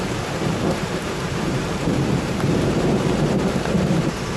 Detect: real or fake fake